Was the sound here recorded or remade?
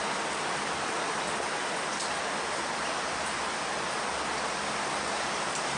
recorded